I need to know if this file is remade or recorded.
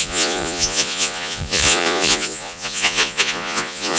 remade